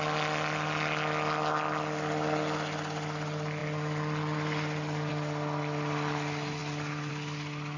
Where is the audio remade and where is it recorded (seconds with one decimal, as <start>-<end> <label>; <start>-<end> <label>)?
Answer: 0.0-7.8 recorded